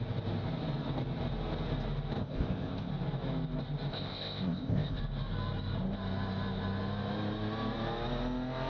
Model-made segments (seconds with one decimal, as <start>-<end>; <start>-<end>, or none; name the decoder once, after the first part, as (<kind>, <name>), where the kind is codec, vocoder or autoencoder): 2.2-2.9 (codec, ZipCodec); 3.9-5.0